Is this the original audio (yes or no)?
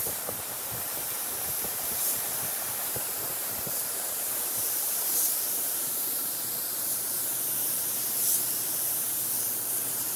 no